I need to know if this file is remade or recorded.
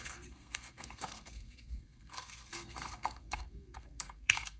remade